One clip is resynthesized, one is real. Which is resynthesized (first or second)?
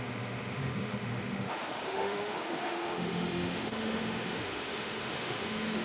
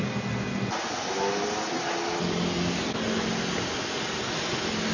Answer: first